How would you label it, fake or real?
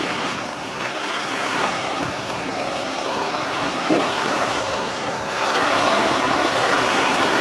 fake